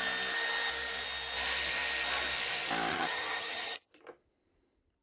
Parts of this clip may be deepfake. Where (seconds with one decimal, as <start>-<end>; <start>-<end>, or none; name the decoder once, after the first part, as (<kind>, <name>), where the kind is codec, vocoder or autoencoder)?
2.9-3.9 (vocoder, HiFi-GAN)